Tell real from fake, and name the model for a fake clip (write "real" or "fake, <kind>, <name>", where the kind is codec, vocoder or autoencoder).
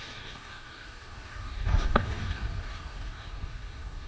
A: fake, codec, DAC